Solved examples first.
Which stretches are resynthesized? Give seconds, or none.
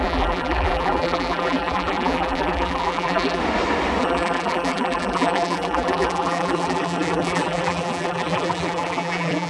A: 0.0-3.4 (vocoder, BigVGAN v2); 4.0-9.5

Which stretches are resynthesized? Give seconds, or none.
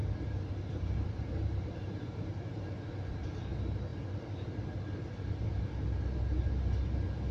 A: 0.0-2.6 (vocoder, BigVGAN v2)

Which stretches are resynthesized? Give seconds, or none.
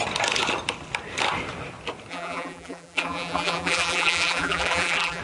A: 2.1-5.2 (vocoder, BigVGAN v2)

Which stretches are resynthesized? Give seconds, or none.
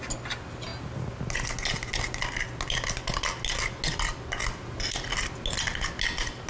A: none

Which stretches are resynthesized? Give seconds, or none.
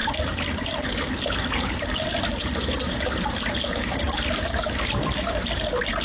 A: 0.0-2.0 (vocoder, BigVGAN v2); 2.4-6.0